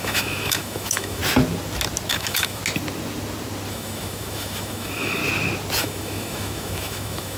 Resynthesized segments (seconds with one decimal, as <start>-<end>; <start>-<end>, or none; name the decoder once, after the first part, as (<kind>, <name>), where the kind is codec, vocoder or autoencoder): 0.0-1.2 (autoencoder, DAC-VAE); 2.1-2.6; 3.7-5.2; 5.8-7.4